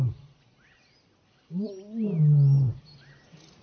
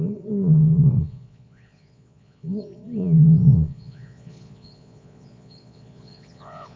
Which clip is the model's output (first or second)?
second